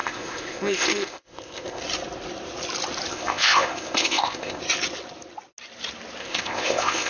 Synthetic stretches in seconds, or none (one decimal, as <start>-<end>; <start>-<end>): 0.0-1.8; 3.1-4.6; 6.2-7.1